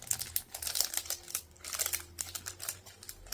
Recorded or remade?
recorded